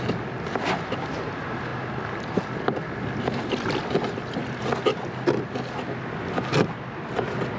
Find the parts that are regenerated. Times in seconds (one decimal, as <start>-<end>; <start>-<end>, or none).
none